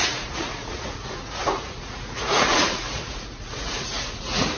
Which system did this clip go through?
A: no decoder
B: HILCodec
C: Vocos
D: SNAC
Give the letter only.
C